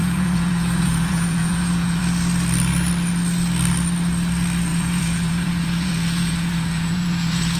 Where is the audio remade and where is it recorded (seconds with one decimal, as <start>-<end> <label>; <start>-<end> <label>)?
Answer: 0.0-2.0 remade; 2.0-4.7 recorded; 4.7-7.6 remade